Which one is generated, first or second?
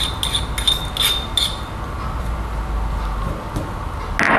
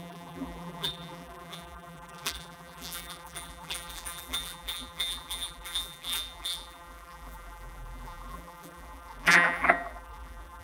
second